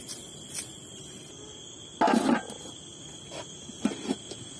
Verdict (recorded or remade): recorded